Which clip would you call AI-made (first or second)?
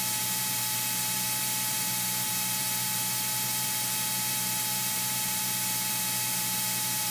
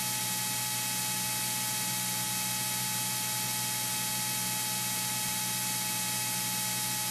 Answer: first